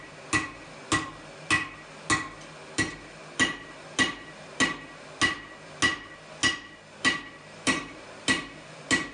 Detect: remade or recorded recorded